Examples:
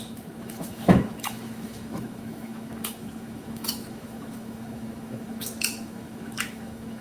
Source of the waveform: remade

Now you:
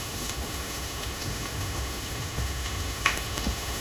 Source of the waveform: remade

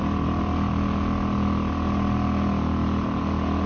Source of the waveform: recorded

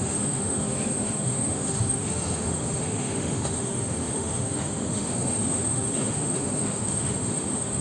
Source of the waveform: remade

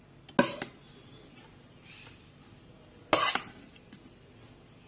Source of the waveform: recorded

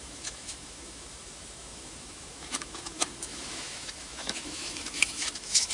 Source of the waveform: remade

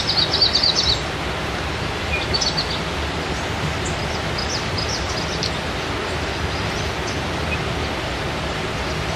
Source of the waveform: recorded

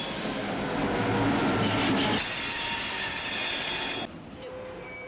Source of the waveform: recorded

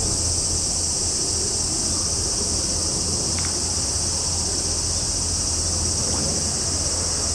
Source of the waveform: recorded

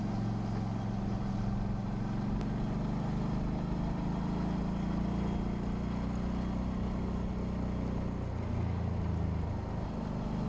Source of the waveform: recorded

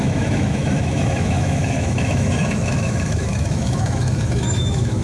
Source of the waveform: remade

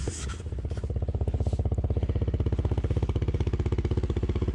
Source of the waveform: recorded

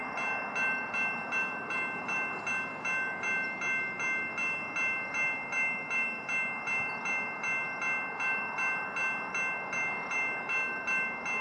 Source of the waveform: recorded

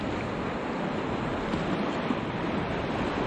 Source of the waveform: recorded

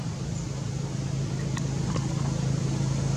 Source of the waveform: recorded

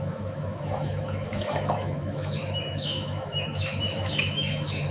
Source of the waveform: remade